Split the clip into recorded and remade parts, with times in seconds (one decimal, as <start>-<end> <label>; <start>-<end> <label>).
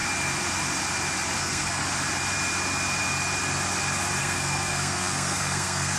0.0-1.4 recorded; 1.4-1.8 remade; 1.8-4.2 recorded; 4.2-6.0 remade